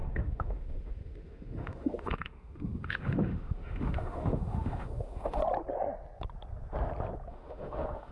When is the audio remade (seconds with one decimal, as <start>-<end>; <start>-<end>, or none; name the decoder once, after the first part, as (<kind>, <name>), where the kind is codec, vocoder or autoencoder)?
0.0-5.4 (autoencoder, DAC-VAE); 7.3-8.1

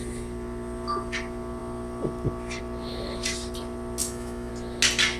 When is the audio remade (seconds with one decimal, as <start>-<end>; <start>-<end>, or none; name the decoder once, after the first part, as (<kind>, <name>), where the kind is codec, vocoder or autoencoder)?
4.0-4.5 (autoencoder, DAC-VAE)

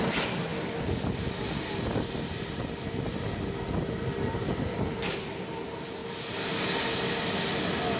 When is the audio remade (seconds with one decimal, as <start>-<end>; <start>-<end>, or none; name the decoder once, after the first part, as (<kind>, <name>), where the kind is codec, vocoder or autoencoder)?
none

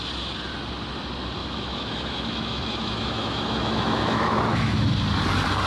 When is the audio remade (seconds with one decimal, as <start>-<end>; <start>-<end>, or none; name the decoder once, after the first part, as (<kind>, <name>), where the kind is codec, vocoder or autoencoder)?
1.4-4.8 (autoencoder, DAC-VAE)

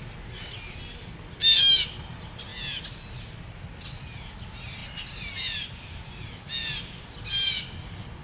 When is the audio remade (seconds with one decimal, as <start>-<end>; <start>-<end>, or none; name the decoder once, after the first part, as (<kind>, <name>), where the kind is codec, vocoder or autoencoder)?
none

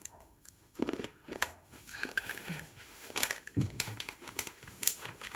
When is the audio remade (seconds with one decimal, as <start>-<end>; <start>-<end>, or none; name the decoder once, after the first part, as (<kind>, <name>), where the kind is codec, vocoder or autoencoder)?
0.0-5.4 (autoencoder, DAC-VAE)

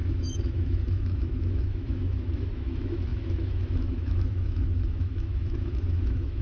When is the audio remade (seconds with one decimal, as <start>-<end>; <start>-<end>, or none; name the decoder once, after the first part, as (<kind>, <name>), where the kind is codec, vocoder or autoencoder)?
0.0-6.4 (autoencoder, DAC-VAE)

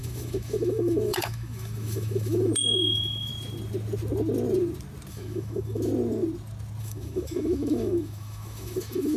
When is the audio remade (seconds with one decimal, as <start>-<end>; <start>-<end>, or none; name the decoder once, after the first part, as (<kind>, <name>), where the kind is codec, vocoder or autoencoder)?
0.0-3.3 (autoencoder, DAC-VAE); 5.1-5.9; 6.8-9.2